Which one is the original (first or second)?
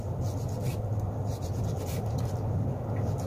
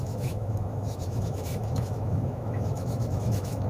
first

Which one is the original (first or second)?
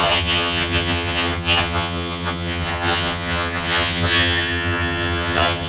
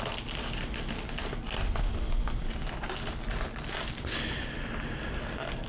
second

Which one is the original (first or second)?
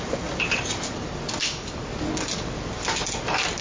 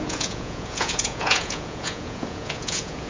first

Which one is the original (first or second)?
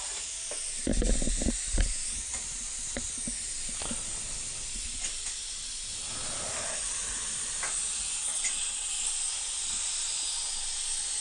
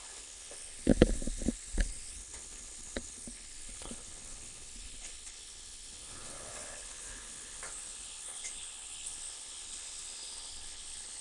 first